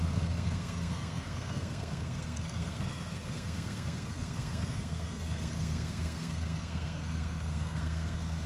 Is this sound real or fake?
fake